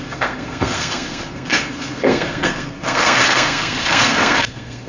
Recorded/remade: remade